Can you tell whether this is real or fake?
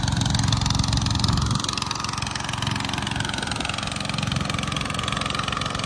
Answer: real